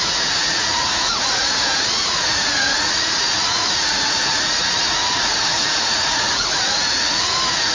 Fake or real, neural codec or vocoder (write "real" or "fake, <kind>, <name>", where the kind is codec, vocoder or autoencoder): fake, vocoder, Vocos